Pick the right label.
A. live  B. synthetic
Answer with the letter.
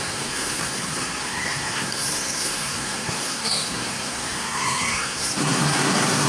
B